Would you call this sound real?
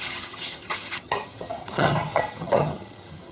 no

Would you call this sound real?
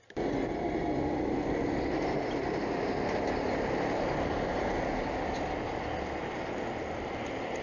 yes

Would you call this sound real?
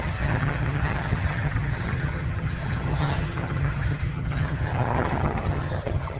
no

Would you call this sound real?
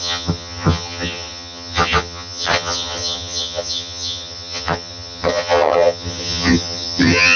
no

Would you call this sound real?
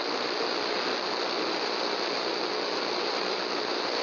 yes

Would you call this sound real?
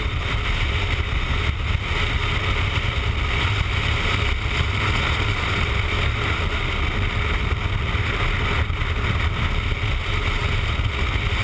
yes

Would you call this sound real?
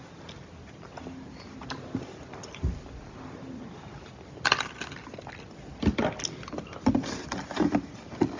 yes